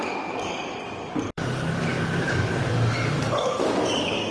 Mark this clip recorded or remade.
remade